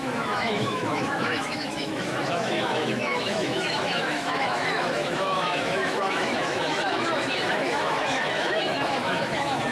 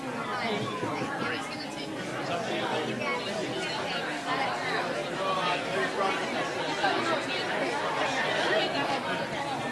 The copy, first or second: first